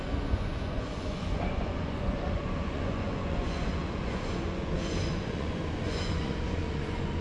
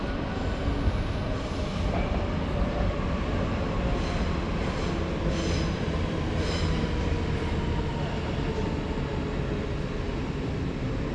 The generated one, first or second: first